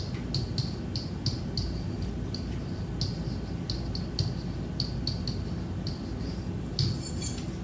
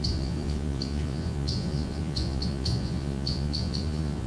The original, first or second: first